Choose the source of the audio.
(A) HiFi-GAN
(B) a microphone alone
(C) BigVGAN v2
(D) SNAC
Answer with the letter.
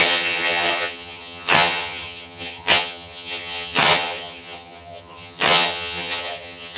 A